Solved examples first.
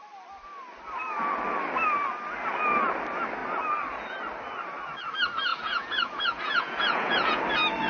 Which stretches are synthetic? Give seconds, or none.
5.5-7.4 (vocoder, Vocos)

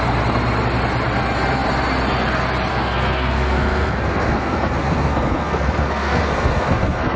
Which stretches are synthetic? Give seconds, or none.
2.7-7.2 (codec, SNAC)

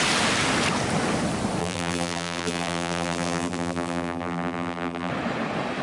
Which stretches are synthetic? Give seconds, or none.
1.6-5.1 (vocoder, BigVGAN v2)

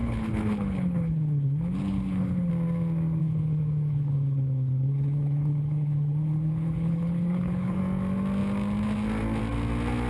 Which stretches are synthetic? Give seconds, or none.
0.0-2.5 (codec, HILCodec); 3.2-7.8

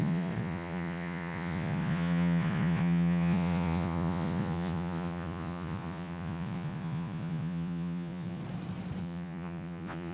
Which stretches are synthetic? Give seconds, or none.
0.0-8.4 (vocoder, Vocos); 9.0-10.1

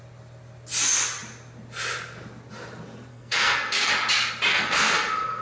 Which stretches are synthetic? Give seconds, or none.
3.1-3.9 (codec, SNAC); 4.5-5.4